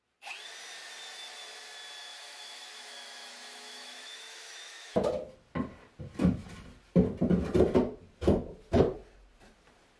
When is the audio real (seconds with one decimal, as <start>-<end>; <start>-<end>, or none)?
0.0-2.0; 5.0-10.0